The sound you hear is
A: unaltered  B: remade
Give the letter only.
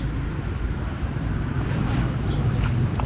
B